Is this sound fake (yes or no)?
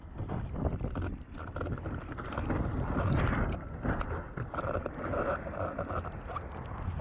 no